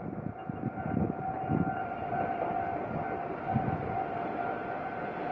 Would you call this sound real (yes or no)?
yes